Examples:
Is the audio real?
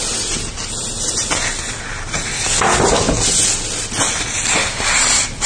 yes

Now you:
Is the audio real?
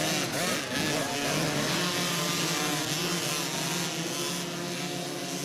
yes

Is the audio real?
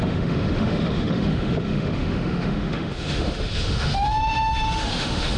no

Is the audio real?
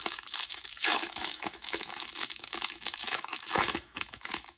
no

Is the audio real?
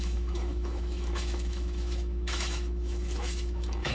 no